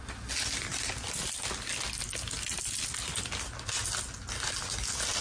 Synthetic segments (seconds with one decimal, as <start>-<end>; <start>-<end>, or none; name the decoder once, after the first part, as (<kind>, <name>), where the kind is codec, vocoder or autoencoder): none